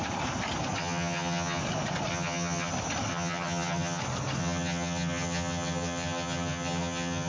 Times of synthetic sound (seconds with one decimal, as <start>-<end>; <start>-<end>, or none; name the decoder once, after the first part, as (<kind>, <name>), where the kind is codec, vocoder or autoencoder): 0.8-1.6 (vocoder, HiFi-GAN); 2.1-2.7; 3.1-4.0; 4.4-7.3